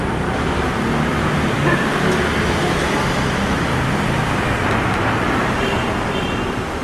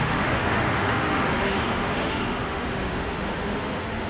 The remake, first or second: second